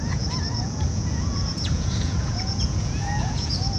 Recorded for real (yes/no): no